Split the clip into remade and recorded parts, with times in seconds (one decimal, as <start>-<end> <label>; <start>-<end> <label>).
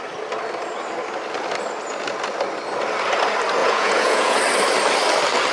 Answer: 0.0-3.6 recorded; 3.6-4.4 remade; 4.4-5.5 recorded